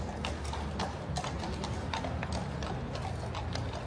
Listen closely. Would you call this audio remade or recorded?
recorded